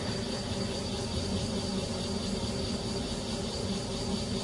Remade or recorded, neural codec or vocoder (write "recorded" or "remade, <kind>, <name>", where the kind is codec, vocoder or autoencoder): recorded